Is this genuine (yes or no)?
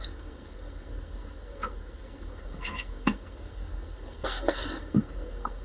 no